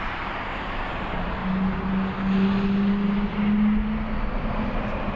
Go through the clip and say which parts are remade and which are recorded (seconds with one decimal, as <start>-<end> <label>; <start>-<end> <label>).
0.0-1.4 remade; 1.4-4.5 recorded; 4.5-5.2 remade